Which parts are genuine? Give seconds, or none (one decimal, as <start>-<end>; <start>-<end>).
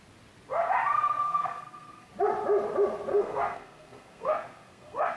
0.0-0.9; 2.1-3.1